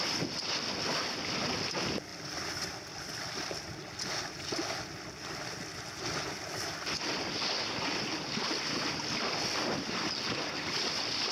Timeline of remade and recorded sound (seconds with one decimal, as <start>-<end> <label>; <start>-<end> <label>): 0.0-2.1 recorded; 2.1-3.7 remade; 3.7-11.3 recorded